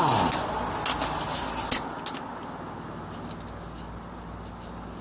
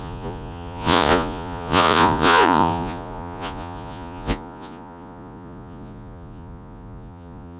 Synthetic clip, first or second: second